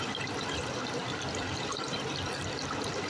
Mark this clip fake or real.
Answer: real